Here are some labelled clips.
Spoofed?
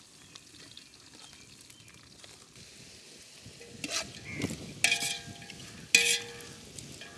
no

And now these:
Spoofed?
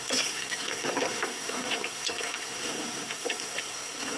yes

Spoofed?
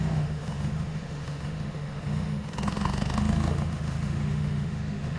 yes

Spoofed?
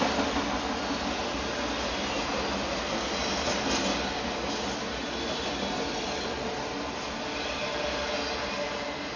no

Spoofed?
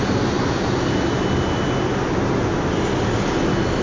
no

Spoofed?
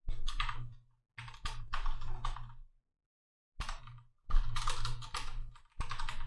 no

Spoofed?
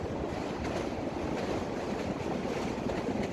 no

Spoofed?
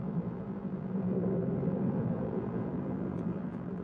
yes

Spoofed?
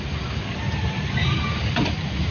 no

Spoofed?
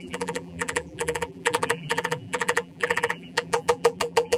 yes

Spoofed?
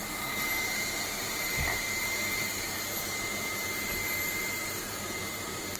yes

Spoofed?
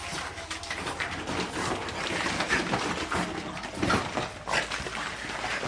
no